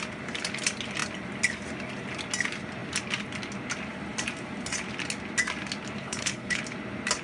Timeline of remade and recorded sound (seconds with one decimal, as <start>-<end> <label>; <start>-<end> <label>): 0.0-6.0 recorded; 6.0-6.6 remade; 6.6-7.2 recorded